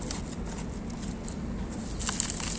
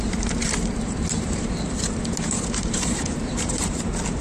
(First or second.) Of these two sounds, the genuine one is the first